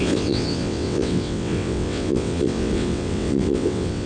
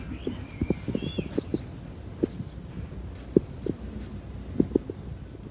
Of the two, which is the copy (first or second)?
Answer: first